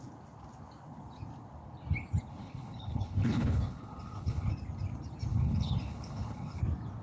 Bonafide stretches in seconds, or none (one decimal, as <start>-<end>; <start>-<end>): 0.0-2.3; 4.5-5.3; 6.6-7.0